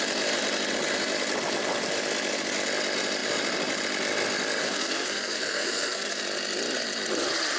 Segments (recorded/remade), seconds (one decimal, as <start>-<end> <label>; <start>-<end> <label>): 0.0-4.6 recorded; 4.6-6.2 remade; 6.2-7.6 recorded